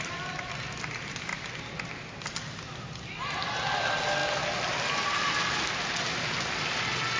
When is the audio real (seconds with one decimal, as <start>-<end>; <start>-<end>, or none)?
1.3-3.0; 4.2-7.2